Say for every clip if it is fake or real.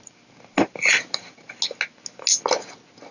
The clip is real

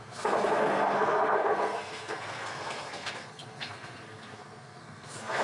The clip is fake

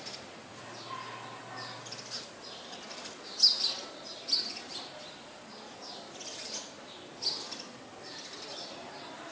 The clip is real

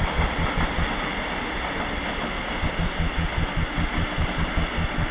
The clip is real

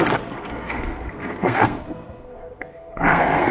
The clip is fake